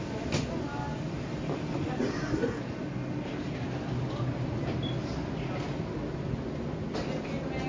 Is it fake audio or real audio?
real